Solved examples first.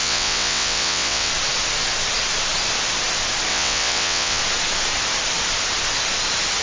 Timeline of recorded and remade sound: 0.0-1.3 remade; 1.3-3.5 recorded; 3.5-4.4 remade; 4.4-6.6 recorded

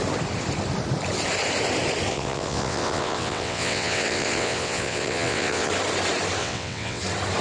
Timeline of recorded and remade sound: 0.0-2.1 recorded; 2.1-5.7 remade; 5.7-6.4 recorded; 6.4-7.0 remade; 7.0-7.4 recorded

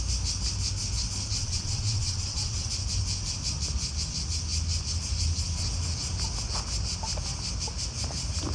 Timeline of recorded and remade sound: 0.0-1.4 recorded; 1.4-2.7 remade; 2.7-8.5 recorded